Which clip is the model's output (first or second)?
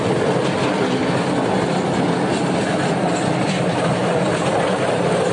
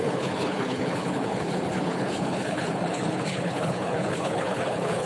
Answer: second